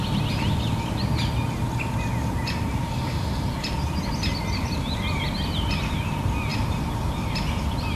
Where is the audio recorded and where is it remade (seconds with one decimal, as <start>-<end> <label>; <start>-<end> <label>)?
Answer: 0.0-8.0 recorded